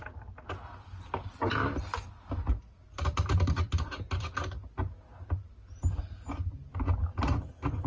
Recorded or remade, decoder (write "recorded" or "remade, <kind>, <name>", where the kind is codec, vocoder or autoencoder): recorded